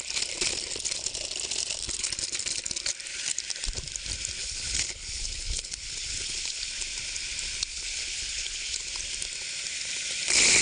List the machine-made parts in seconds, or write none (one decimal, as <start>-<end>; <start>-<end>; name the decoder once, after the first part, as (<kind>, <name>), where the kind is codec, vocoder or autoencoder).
4.4-6.7 (codec, HILCodec); 7.7-8.9